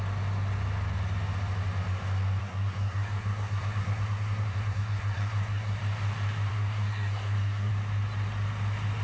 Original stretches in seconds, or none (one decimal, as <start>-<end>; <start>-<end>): 0.0-2.4; 5.8-6.5; 7.7-9.0

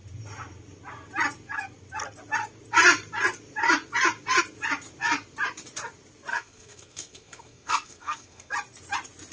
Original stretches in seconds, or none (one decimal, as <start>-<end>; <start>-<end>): 0.0-6.3; 8.5-9.3

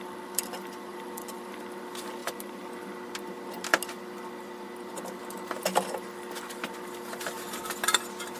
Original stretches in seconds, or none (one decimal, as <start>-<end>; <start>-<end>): 0.0-8.4

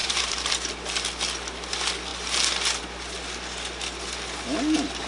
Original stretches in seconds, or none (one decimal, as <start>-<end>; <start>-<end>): 0.5-5.1